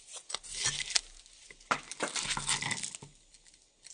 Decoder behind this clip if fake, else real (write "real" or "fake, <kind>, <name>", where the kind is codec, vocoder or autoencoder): real